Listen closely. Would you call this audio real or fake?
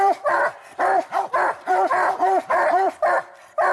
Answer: fake